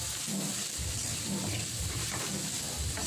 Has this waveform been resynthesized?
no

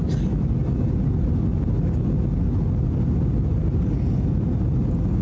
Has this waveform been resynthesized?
no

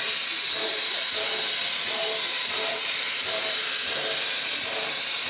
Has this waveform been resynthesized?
yes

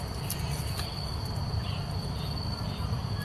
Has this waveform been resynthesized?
no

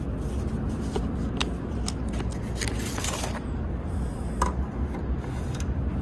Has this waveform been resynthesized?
no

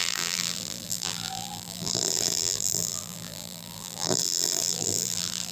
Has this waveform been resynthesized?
yes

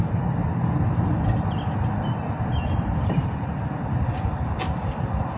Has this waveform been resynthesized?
no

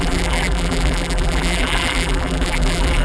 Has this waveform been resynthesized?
yes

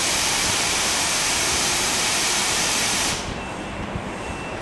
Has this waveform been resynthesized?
yes